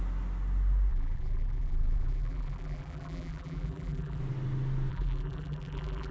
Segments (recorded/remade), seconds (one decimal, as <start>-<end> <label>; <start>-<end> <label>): 0.0-0.9 recorded; 0.9-4.2 remade; 4.2-4.9 recorded; 4.9-6.1 remade